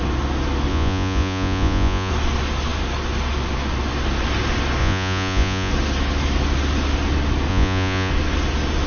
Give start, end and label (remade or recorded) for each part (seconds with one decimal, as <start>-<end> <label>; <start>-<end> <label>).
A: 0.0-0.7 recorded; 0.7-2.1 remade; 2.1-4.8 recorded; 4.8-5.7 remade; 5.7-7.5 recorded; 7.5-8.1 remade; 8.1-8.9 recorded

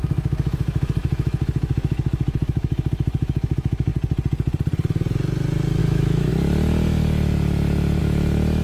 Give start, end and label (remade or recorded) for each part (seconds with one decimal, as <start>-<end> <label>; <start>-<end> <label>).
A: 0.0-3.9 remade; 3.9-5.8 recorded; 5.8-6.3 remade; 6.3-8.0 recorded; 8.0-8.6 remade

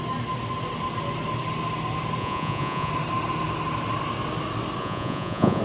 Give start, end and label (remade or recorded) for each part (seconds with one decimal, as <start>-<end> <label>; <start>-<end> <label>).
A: 0.0-2.2 recorded; 2.2-2.9 remade; 2.9-4.8 recorded; 4.8-5.6 remade

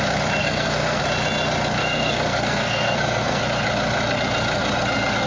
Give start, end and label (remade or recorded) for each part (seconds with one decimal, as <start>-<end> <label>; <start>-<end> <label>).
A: 0.0-0.4 recorded; 0.4-1.0 remade; 1.0-1.8 recorded; 1.8-3.4 remade; 3.4-5.3 recorded

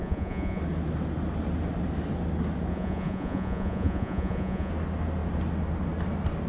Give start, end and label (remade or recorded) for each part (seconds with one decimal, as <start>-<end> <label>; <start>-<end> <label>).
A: 0.0-0.6 remade; 0.6-2.7 recorded; 2.7-4.7 remade; 4.7-6.5 recorded

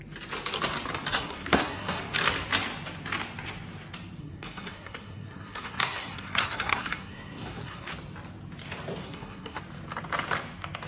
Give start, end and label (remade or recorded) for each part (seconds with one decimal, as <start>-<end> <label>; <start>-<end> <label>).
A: 0.0-1.1 recorded; 1.1-2.0 remade; 2.0-4.2 recorded; 4.2-7.9 remade; 7.9-9.0 recorded; 9.0-9.6 remade; 9.6-10.9 recorded